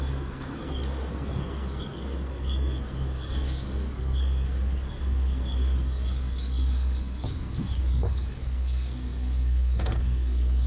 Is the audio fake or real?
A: fake